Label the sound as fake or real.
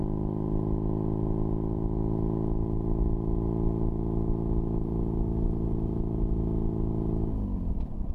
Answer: real